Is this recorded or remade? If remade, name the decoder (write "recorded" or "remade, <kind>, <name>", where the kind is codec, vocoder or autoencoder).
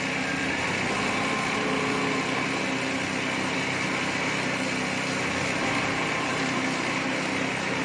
recorded